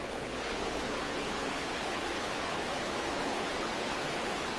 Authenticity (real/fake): fake